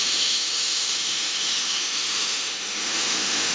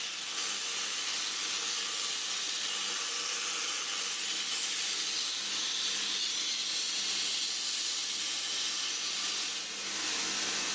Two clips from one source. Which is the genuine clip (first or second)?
second